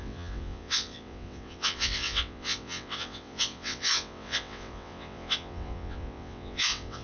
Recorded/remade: remade